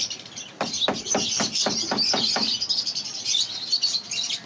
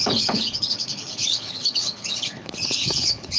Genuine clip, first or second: first